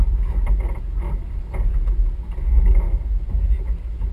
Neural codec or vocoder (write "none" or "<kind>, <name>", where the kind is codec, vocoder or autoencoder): none